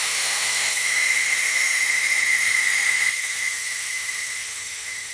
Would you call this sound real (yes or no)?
no